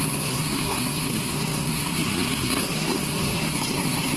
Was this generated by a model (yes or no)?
yes